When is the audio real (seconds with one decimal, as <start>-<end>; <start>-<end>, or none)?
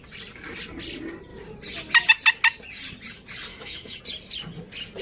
0.0-3.5; 4.0-5.0